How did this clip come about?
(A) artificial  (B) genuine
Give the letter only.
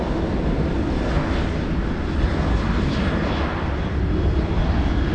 B